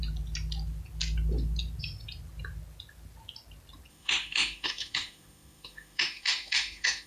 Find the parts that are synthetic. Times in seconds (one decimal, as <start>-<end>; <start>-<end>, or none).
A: 3.9-7.1